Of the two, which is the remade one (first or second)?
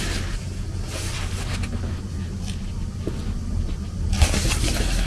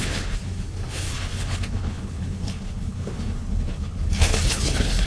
second